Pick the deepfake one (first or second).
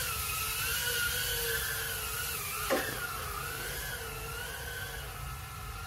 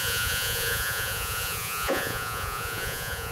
second